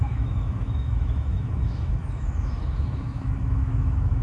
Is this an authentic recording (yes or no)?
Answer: no